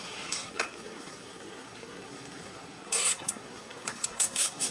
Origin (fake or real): fake